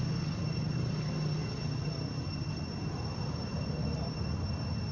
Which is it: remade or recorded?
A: recorded